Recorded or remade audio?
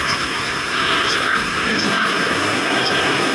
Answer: remade